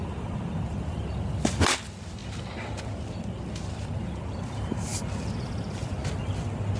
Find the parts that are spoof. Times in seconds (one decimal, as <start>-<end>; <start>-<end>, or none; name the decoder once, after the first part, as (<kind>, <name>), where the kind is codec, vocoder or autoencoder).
none